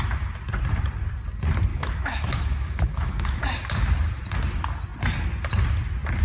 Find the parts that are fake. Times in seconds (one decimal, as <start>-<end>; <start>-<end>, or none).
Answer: 1.7-3.4